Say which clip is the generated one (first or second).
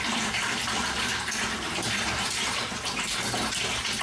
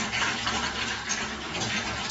first